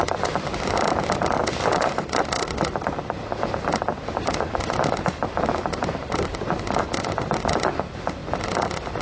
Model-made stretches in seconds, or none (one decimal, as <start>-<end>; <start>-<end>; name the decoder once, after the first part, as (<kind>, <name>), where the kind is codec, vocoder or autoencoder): none